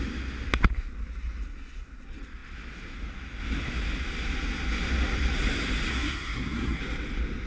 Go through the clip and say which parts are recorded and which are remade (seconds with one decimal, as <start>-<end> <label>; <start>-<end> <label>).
0.0-5.9 recorded; 5.9-6.8 remade; 6.8-7.5 recorded